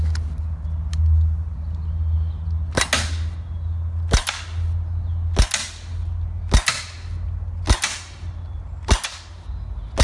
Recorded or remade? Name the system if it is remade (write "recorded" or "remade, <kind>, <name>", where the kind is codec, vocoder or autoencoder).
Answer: recorded